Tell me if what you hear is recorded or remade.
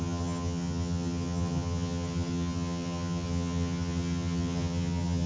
remade